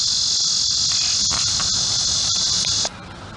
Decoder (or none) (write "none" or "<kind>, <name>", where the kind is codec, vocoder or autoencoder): none